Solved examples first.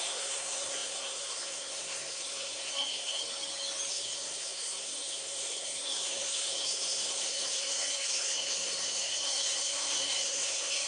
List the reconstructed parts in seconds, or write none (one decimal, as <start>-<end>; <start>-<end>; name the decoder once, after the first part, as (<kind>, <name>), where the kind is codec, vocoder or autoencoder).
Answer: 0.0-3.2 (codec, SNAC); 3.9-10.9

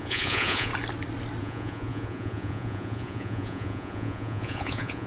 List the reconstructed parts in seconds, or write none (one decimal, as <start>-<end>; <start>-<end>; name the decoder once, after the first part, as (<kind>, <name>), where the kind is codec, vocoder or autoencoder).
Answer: 0.0-0.7 (vocoder, Vocos); 1.4-5.1

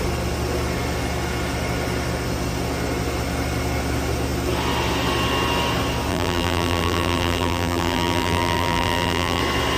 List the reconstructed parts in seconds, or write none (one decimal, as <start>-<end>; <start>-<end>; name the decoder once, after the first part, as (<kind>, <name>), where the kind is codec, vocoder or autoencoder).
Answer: 6.1-9.4 (vocoder, BigVGAN v2)

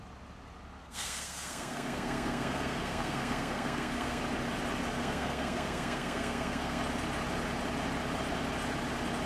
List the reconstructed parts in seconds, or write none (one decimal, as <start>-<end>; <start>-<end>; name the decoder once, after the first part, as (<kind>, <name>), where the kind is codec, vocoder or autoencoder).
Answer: 0.8-4.2 (codec, SNAC); 5.0-6.8

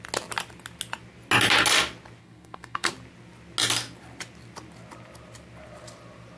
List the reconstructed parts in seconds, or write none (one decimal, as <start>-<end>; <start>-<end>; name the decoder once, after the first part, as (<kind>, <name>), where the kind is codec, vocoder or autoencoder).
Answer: 2.2-2.9 (codec, SNAC)